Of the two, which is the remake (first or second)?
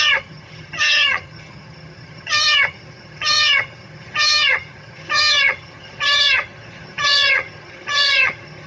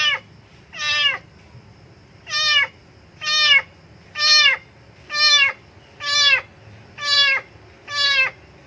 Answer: first